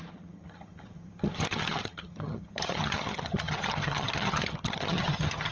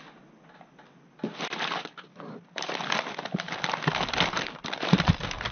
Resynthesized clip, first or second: first